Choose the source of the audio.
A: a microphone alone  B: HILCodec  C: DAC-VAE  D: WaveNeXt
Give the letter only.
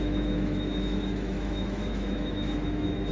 C